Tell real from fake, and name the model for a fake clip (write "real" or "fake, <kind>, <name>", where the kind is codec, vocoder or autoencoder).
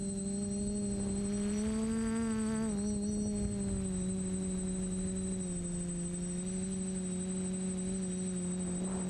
real